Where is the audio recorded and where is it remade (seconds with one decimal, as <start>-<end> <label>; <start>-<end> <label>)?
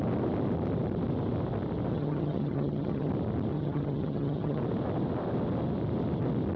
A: 0.0-1.9 recorded; 1.9-3.1 remade; 3.1-3.5 recorded; 3.5-4.6 remade; 4.6-6.6 recorded